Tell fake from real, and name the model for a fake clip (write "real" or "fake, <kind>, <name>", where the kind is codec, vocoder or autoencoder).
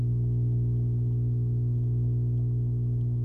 fake, autoencoder, DAC-VAE